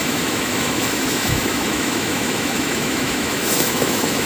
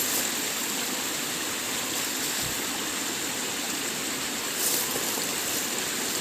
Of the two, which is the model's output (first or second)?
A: first